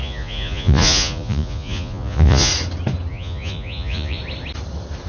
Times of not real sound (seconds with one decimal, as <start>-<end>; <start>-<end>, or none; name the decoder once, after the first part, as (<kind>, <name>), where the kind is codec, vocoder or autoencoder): 0.0-2.5 (vocoder, Vocos); 3.1-4.2

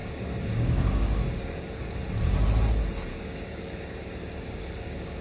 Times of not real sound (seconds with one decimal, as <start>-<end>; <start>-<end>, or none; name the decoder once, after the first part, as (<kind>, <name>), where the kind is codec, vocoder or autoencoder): 0.0-2.0 (codec, DAC); 3.1-5.2

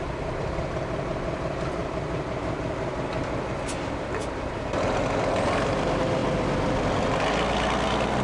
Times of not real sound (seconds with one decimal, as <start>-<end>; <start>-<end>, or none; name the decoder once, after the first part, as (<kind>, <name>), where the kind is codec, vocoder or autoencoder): 1.8-2.4 (vocoder, BigVGAN v2)

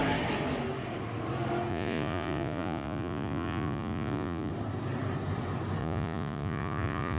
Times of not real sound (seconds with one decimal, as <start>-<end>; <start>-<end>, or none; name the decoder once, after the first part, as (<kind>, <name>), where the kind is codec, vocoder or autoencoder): 1.7-4.5 (vocoder, Vocos); 5.8-7.2

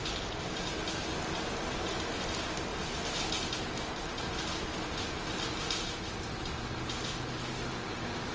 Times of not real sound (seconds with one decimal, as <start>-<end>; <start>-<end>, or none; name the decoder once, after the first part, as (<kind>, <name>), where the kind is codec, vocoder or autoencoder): none

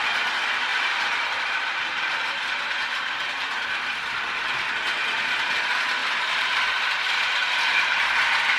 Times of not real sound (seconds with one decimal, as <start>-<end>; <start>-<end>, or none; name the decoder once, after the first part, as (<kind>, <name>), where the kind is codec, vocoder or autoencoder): 0.7-4.7 (vocoder, BigVGAN v2); 6.0-6.7

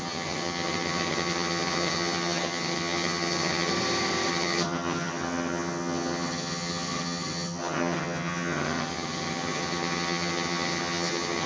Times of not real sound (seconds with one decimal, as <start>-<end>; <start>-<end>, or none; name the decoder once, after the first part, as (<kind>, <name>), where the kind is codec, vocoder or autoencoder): 0.0-3.7 (vocoder, HiFi-GAN); 4.3-11.5